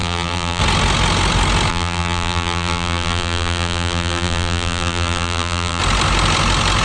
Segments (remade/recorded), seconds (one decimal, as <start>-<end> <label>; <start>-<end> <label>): 0.0-0.6 remade; 0.6-1.7 recorded; 1.7-5.8 remade; 5.8-6.8 recorded